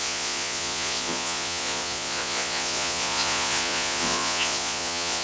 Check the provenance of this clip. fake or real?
fake